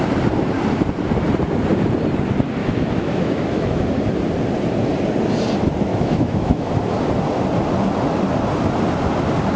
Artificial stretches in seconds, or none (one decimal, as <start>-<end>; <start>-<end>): 2.6-3.7; 5.9-6.7